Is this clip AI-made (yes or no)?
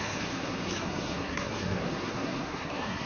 yes